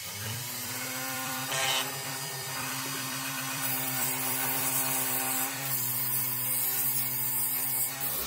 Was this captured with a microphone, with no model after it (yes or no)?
no